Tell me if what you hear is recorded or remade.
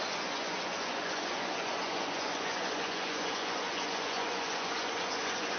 remade